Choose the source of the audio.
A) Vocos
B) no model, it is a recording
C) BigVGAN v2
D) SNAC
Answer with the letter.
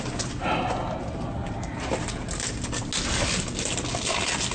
B